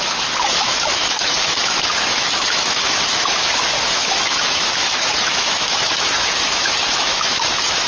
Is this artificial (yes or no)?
yes